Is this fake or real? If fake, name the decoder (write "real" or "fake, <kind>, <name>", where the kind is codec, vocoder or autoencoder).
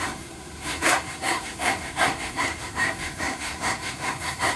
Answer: fake, codec, SNAC